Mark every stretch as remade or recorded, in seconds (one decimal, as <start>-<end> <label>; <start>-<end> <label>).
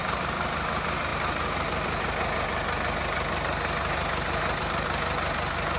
0.0-5.8 recorded